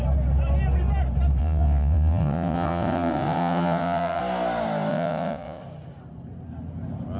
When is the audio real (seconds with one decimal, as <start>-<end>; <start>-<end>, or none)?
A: 0.0-1.4; 4.2-4.9; 5.6-7.2